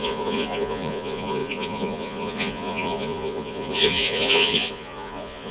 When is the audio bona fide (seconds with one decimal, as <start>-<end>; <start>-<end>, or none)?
none